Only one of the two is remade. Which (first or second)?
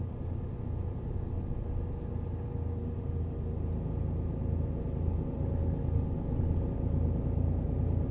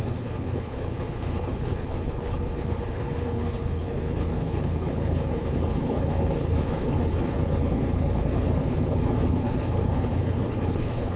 second